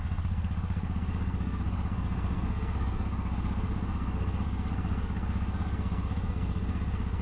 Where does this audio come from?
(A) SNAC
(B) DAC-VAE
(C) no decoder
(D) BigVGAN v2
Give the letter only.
A